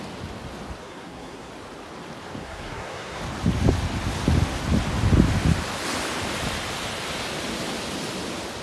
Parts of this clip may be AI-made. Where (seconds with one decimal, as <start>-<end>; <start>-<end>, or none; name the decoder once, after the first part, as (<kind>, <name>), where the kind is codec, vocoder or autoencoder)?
0.8-1.5 (codec, SNAC); 2.4-3.2